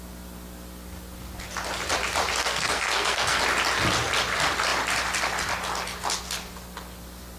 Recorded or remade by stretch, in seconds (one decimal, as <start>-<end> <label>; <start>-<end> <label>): 0.0-2.4 recorded; 2.4-3.4 remade; 3.4-7.4 recorded